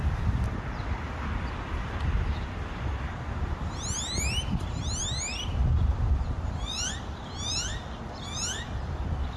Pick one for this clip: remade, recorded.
recorded